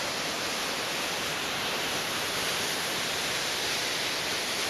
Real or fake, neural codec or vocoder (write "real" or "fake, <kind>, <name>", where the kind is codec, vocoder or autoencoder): real